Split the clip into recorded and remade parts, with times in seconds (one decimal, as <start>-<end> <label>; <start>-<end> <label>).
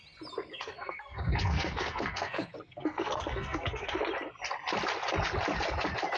0.0-0.5 recorded; 0.5-4.0 remade; 4.0-6.2 recorded